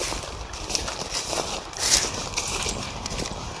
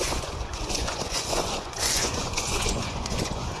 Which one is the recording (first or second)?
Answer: first